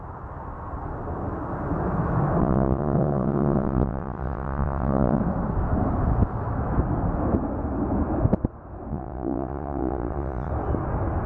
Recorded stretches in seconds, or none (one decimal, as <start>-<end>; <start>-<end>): 0.0-2.4; 5.2-8.9; 10.5-11.3